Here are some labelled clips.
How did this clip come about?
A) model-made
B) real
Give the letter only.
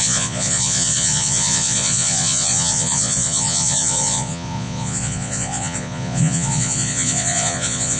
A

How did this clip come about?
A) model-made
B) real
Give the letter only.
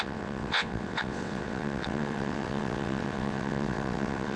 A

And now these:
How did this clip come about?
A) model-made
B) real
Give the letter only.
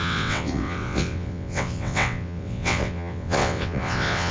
A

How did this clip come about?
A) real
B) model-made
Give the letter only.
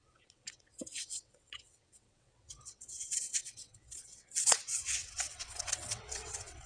B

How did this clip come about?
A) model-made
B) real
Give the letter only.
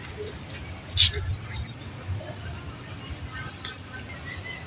B